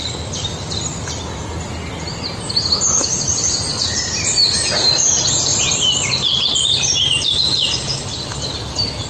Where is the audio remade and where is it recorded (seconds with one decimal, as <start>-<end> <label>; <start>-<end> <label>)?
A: 0.0-0.9 remade; 0.9-3.4 recorded; 3.4-9.1 remade